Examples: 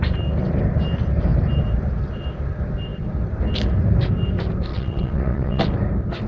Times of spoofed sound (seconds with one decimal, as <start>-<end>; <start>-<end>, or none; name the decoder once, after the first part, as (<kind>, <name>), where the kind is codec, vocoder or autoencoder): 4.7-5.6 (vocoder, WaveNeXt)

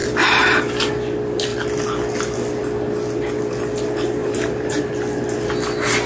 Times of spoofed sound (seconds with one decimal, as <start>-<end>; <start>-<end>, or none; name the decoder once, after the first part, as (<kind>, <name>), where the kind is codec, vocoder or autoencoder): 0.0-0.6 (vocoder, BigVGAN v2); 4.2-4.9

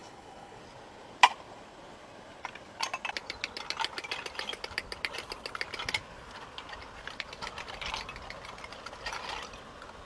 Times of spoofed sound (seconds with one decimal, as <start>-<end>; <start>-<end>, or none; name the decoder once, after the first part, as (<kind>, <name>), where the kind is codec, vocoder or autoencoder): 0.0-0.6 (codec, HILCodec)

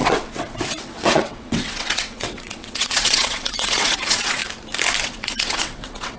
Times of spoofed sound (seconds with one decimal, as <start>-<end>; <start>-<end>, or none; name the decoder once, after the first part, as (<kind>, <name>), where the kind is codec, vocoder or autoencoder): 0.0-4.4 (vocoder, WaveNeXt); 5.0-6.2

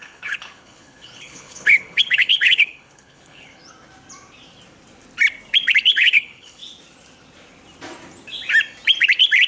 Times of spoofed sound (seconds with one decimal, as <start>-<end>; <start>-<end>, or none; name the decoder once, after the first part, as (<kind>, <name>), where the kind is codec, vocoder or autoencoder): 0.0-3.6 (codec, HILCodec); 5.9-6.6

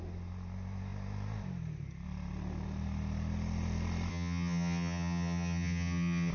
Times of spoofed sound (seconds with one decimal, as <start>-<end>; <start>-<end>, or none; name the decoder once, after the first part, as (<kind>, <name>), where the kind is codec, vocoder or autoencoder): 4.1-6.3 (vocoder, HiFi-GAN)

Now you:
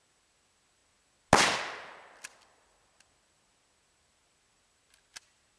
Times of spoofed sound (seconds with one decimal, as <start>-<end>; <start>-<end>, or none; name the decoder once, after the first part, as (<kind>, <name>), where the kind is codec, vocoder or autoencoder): none

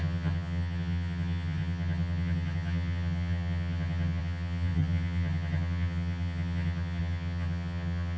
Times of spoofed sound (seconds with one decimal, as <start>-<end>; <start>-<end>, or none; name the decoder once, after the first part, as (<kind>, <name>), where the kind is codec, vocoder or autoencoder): 0.0-8.2 (vocoder, HiFi-GAN)